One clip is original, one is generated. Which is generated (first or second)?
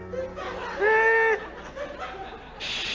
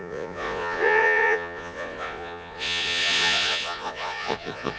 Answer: second